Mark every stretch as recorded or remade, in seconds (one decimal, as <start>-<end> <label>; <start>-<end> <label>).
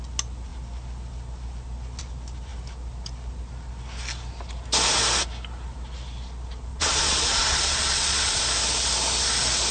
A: 0.0-6.7 recorded; 6.7-8.4 remade; 8.4-9.7 recorded